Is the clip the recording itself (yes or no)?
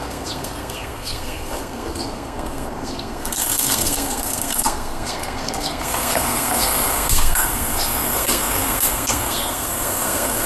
no